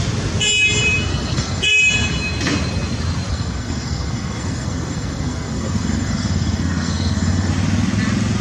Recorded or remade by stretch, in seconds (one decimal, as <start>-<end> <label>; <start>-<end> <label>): 0.0-1.1 recorded; 1.1-1.8 remade; 1.8-3.3 recorded; 3.3-7.5 remade; 7.5-8.4 recorded